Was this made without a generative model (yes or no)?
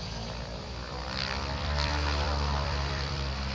no